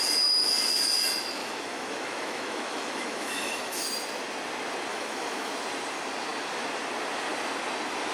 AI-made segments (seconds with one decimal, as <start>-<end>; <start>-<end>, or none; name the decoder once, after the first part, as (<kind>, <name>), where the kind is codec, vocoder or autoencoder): 1.4-3.9 (autoencoder, DAC-VAE); 4.9-5.5